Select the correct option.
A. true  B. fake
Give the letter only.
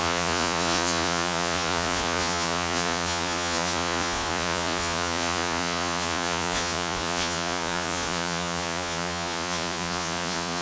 B